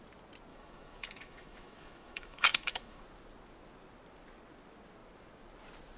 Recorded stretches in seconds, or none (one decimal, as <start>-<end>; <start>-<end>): 0.0-0.5; 3.0-6.0